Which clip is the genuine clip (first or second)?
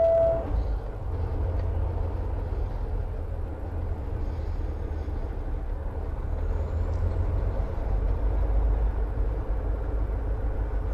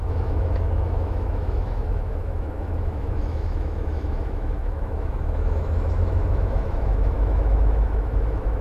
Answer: first